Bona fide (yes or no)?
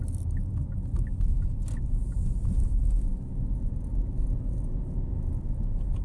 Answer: yes